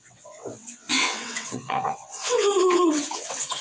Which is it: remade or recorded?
remade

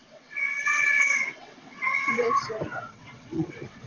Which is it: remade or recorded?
remade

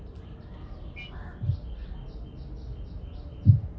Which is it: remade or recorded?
recorded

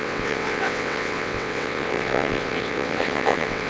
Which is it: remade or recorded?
remade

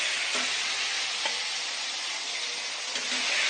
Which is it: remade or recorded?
recorded